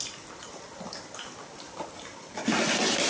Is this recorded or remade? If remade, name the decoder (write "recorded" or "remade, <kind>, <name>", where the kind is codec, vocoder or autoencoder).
recorded